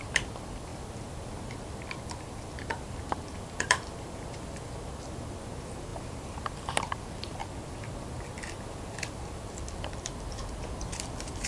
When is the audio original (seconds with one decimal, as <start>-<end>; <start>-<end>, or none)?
5.9-6.8; 7.4-9.1